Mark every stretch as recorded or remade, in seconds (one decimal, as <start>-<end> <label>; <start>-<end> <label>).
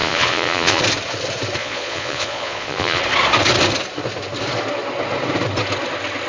0.0-0.8 remade; 0.8-1.6 recorded; 1.6-3.0 remade; 3.0-6.3 recorded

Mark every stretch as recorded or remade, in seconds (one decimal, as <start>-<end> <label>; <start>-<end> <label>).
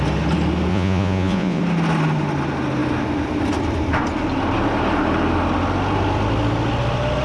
0.0-0.7 recorded; 0.7-1.6 remade; 1.6-7.2 recorded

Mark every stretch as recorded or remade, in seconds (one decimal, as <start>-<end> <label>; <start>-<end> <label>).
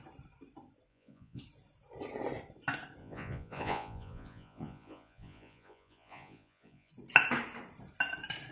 0.0-0.9 recorded; 0.9-1.4 remade; 1.4-3.0 recorded; 3.0-6.9 remade; 6.9-8.5 recorded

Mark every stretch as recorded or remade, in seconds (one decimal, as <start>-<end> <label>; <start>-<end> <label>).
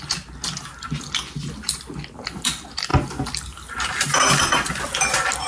0.0-5.5 recorded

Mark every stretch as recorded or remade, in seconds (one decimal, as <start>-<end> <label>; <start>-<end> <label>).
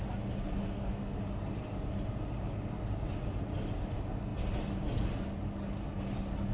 0.0-0.6 recorded; 0.6-1.2 remade; 1.2-6.5 recorded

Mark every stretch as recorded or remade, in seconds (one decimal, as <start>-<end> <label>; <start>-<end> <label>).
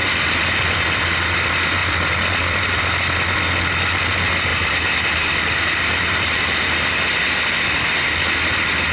0.0-1.0 remade; 1.0-1.8 recorded; 1.8-2.8 remade; 2.8-4.5 recorded; 4.5-8.5 remade; 8.5-8.9 recorded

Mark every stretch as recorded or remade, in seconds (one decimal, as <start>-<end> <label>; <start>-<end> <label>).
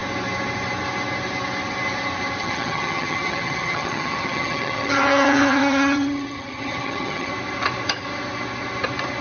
0.0-2.4 recorded; 2.4-7.3 remade; 7.3-9.2 recorded